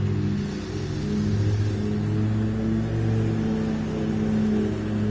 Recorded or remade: recorded